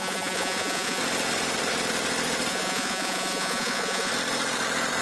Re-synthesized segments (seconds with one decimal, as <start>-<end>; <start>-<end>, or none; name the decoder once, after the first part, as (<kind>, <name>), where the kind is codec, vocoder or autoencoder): 0.0-1.0 (vocoder, Vocos); 2.5-4.1